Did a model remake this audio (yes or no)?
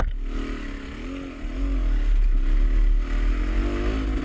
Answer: no